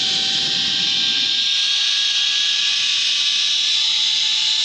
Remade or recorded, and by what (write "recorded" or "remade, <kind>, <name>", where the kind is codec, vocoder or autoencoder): recorded